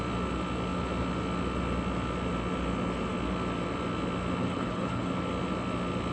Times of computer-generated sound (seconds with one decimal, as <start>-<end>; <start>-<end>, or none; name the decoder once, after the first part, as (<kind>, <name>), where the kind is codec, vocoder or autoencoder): 4.4-5.1 (codec, HILCodec)